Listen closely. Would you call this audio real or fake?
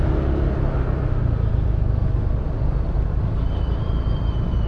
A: real